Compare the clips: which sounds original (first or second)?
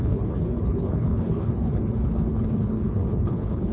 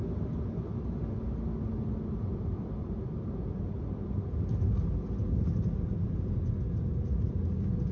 second